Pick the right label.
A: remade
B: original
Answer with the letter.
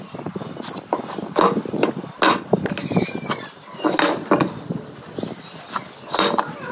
B